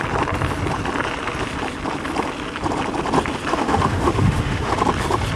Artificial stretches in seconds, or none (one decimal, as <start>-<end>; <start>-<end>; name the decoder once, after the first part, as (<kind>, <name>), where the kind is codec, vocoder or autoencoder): 3.5-4.7 (autoencoder, DAC-VAE)